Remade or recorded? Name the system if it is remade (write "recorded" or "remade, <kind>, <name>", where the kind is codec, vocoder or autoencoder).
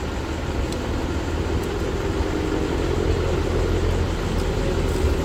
recorded